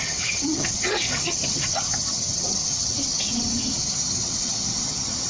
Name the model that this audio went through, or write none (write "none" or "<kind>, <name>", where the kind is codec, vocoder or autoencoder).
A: vocoder, HiFi-GAN